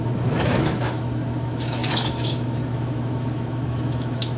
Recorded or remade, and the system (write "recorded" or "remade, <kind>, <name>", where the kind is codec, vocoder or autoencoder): remade, autoencoder, DAC-VAE